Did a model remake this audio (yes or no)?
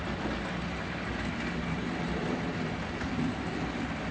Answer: no